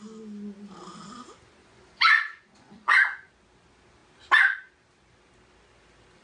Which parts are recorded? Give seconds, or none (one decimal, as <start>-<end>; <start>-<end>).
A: 0.0-1.6; 3.3-6.2